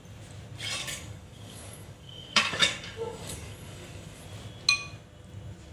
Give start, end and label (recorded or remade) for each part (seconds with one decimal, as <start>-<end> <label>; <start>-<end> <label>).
0.0-0.8 recorded; 0.8-4.2 remade; 4.2-5.7 recorded